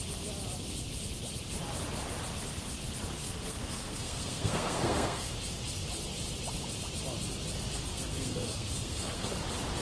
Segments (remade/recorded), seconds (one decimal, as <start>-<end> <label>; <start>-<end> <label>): 0.0-3.2 recorded; 3.2-5.3 remade; 5.3-7.9 recorded; 7.9-9.3 remade; 9.3-9.8 recorded

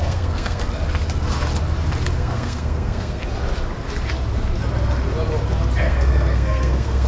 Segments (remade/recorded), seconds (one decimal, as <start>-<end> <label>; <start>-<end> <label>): 0.0-0.6 remade; 0.6-2.1 recorded; 2.1-3.2 remade; 3.2-5.8 recorded; 5.8-7.1 remade

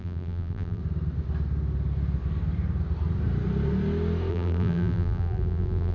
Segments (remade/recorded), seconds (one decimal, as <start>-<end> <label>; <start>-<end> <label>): 0.0-0.8 remade; 0.8-4.3 recorded; 4.3-5.9 remade

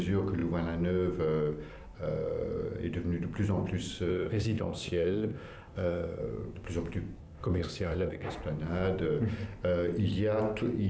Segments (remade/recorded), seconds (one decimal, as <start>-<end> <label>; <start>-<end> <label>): 0.0-4.1 recorded; 4.1-6.2 remade; 6.2-7.2 recorded; 7.2-8.3 remade; 8.3-10.9 recorded

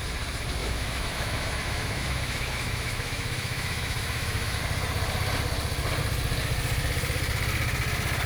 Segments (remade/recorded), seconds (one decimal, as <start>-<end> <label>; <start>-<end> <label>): 0.0-0.6 recorded; 0.6-4.6 remade; 4.6-8.3 recorded

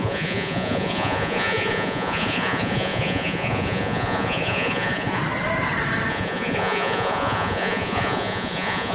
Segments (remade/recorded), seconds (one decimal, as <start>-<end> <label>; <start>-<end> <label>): 0.0-5.2 remade; 5.2-6.1 recorded; 6.1-8.9 remade